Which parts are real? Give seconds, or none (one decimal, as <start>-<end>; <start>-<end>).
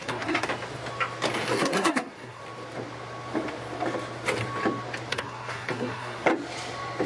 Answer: 0.5-1.6; 2.4-5.1; 6.3-7.1